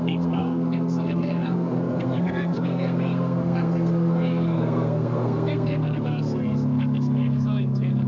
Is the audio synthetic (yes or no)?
yes